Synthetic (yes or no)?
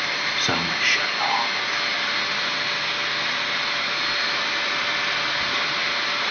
no